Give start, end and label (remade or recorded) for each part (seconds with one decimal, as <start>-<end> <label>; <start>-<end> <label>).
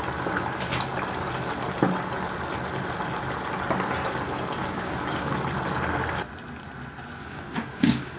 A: 0.0-4.6 recorded; 4.6-5.3 remade; 5.3-7.2 recorded; 7.2-8.2 remade